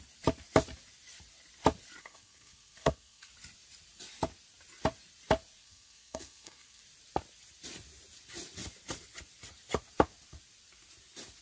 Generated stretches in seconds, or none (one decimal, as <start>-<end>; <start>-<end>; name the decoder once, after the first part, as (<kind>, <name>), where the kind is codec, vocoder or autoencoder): 2.0-3.3 (codec, SNAC); 5.6-6.8